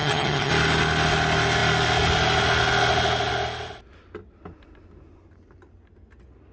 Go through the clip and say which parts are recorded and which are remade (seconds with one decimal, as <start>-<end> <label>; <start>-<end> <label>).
0.0-0.5 remade; 0.5-6.5 recorded